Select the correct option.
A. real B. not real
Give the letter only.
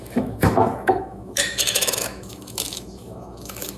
B